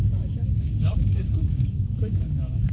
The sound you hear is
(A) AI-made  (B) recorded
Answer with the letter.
A